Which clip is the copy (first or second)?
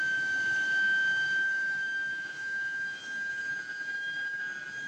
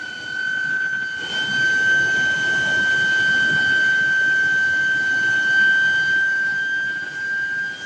first